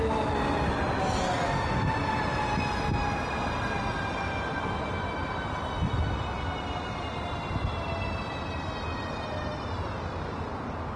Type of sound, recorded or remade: recorded